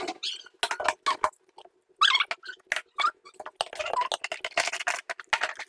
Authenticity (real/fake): real